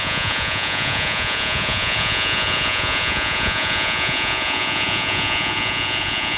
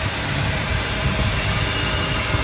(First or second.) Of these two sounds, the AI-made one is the first